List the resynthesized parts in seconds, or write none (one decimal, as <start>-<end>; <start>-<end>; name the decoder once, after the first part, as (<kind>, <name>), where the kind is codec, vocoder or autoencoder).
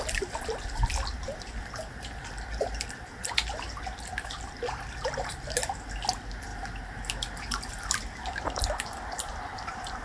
none